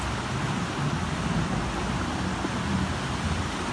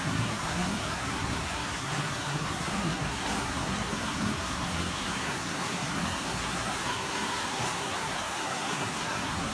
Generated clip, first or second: second